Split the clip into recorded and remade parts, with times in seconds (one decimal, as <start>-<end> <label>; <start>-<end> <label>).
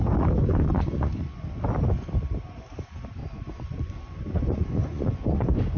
0.0-0.5 recorded; 0.5-1.4 remade; 1.4-3.2 recorded; 3.2-5.8 remade